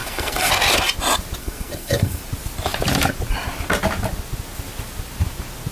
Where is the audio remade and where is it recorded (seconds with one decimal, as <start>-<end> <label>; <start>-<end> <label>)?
0.0-0.5 remade; 0.5-1.4 recorded; 1.4-2.2 remade; 2.2-5.7 recorded